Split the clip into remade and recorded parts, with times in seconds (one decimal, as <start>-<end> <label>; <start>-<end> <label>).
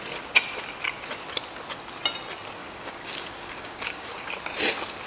0.0-2.6 recorded; 2.6-4.1 remade; 4.1-5.1 recorded